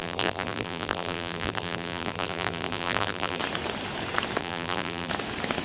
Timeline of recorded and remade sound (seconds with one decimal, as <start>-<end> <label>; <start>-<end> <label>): 0.0-3.4 remade; 3.4-4.4 recorded; 4.4-5.1 remade; 5.1-5.6 recorded